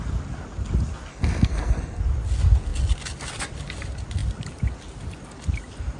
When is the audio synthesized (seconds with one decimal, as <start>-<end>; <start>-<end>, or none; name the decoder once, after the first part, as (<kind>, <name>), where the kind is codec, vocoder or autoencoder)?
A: 1.1-2.0 (codec, SNAC)